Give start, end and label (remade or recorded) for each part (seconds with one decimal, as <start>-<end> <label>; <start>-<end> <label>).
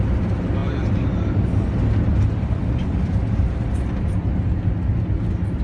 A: 0.0-5.6 recorded